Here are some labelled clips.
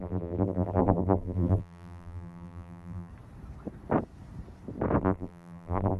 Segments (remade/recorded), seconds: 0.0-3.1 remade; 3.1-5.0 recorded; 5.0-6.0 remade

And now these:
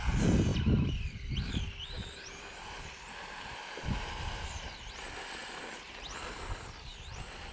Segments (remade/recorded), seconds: 0.0-0.5 recorded; 0.5-4.9 remade; 4.9-5.4 recorded; 5.4-7.5 remade

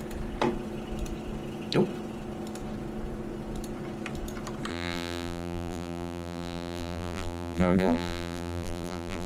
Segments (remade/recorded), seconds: 0.0-4.7 recorded; 4.7-9.3 remade